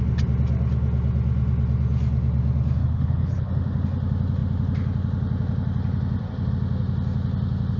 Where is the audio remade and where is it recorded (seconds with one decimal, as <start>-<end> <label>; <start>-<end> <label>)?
0.0-2.8 recorded; 2.8-3.5 remade; 3.5-7.8 recorded